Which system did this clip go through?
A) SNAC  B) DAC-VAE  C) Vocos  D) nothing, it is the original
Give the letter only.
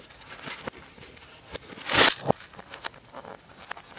D